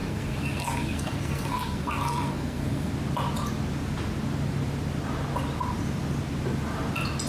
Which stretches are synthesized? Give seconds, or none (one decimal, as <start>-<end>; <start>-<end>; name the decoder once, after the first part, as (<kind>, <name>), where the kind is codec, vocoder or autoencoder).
0.0-2.9 (codec, SNAC)